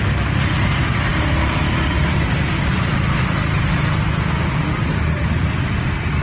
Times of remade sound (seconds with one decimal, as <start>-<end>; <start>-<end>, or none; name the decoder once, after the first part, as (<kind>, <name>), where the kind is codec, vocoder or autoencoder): none